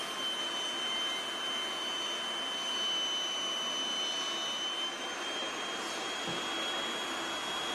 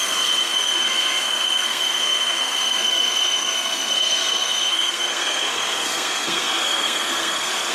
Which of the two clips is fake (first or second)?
second